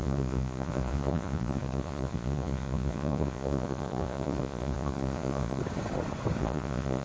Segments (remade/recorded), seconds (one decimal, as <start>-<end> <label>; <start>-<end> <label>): 0.0-5.6 remade; 5.6-6.4 recorded; 6.4-7.0 remade

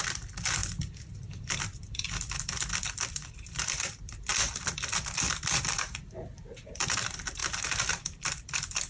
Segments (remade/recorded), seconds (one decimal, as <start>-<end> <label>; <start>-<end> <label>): 0.0-7.4 remade; 7.4-8.0 recorded; 8.0-8.9 remade

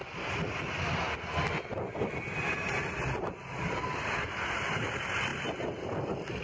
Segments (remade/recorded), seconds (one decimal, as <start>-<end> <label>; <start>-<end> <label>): 0.0-6.4 recorded

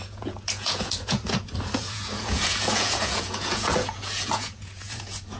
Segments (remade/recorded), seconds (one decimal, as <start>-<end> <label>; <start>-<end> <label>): 0.0-5.4 remade